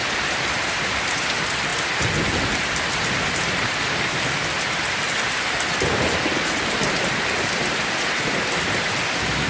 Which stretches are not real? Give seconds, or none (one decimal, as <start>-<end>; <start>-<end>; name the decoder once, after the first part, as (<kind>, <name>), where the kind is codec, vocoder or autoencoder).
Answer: none